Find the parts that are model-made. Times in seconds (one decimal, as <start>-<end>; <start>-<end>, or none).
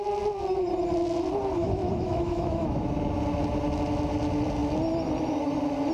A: 1.6-2.9